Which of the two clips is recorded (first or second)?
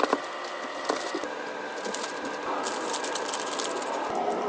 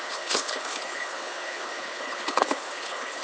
first